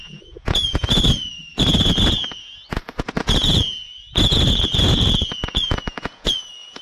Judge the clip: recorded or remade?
remade